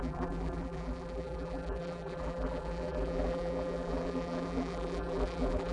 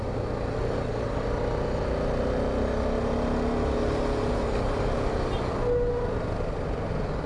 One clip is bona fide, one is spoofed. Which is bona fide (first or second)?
second